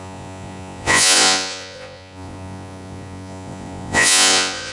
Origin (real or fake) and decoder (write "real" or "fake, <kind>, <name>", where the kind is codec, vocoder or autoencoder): fake, vocoder, Vocos